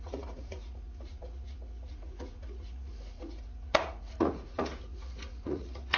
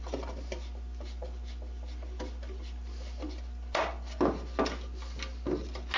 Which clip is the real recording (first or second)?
second